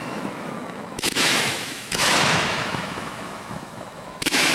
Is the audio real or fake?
fake